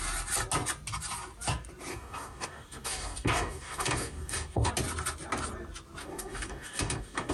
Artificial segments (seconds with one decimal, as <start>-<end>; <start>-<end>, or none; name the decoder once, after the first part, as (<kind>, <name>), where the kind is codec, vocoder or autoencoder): 1.9-4.7 (codec, DAC); 6.0-7.3